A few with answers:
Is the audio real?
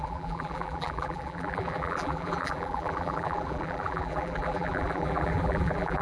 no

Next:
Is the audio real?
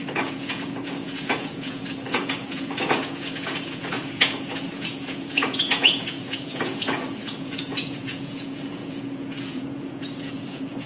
no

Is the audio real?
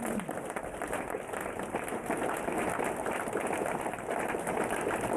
yes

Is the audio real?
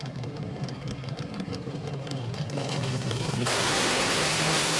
no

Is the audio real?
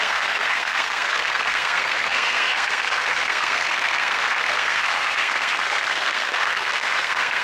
no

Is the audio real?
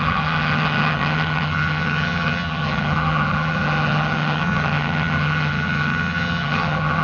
no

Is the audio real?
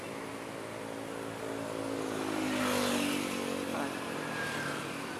yes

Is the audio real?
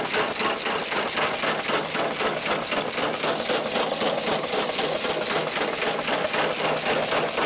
yes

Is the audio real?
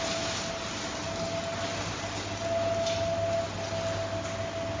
yes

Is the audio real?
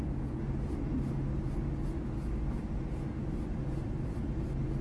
yes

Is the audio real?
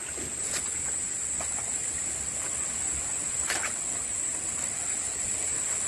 yes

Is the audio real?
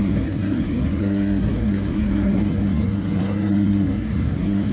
no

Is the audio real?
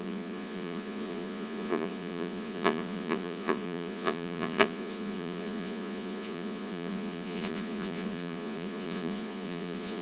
no